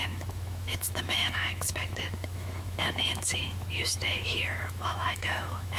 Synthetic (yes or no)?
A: yes